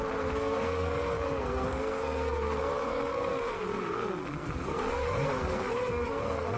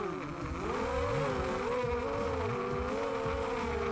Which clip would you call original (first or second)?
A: second